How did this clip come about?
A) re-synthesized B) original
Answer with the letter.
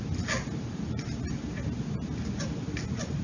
B